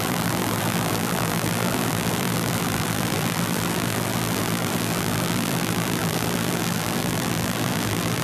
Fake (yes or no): yes